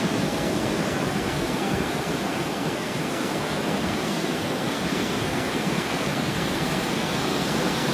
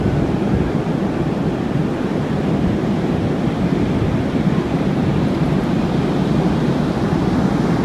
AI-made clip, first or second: first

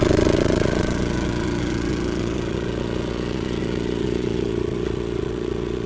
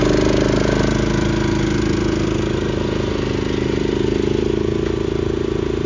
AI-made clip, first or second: first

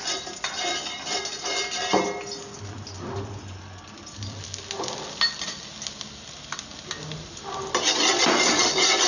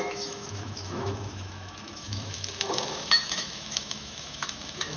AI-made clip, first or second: second